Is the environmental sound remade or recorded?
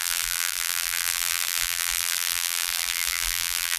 remade